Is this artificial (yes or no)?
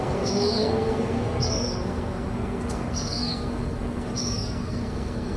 yes